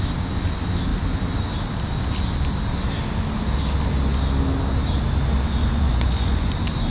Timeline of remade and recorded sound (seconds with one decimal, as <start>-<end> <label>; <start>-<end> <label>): 0.0-5.6 recorded; 5.6-6.5 remade; 6.5-6.9 recorded